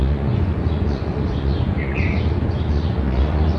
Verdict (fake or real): fake